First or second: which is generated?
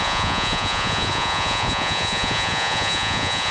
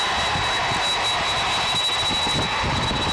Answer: first